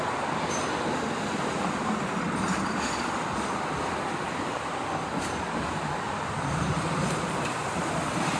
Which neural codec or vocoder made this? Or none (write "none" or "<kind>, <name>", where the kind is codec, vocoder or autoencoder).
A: none